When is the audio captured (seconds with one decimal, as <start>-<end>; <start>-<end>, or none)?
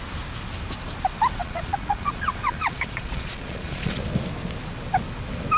0.0-1.4; 4.0-5.6